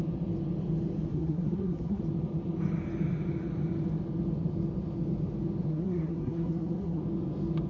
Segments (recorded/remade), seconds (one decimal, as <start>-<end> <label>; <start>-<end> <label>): 0.0-1.1 recorded; 1.1-2.0 remade; 2.0-5.7 recorded; 5.7-7.0 remade; 7.0-7.7 recorded